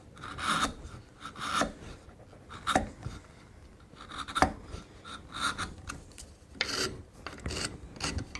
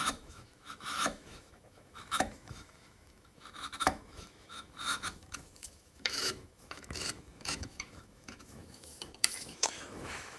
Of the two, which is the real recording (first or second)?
first